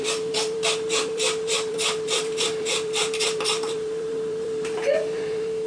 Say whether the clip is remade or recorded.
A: remade